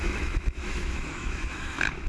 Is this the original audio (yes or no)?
no